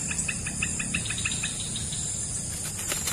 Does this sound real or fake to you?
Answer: real